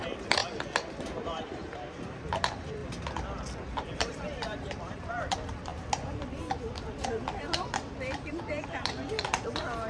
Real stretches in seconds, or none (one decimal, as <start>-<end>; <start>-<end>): 0.4-1.0; 2.8-4.0; 5.7-7.4